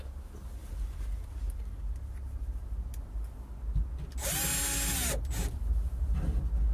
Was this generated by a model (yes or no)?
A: no